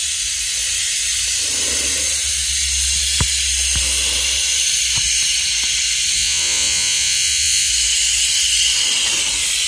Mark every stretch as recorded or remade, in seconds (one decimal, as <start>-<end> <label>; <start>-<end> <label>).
0.0-6.2 recorded; 6.2-7.7 remade; 7.7-9.7 recorded